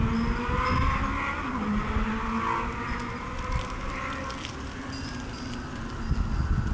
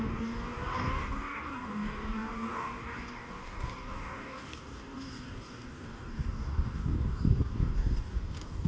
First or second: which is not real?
second